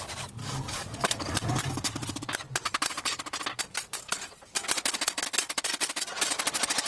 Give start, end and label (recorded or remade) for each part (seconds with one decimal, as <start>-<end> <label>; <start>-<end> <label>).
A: 0.0-0.4 recorded; 0.4-1.9 remade; 1.9-6.9 recorded